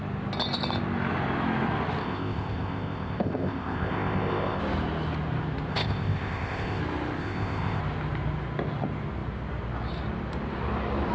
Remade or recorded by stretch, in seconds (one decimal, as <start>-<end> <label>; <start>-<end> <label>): 0.0-2.0 recorded; 2.0-4.6 remade; 4.6-5.7 recorded; 5.7-6.8 remade; 6.8-7.2 recorded; 7.2-7.8 remade; 7.8-11.1 recorded